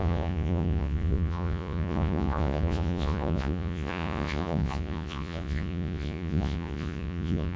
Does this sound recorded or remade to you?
remade